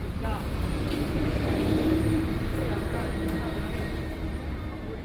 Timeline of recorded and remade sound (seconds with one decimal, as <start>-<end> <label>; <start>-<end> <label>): 0.0-2.5 remade; 2.5-4.4 recorded; 4.4-5.0 remade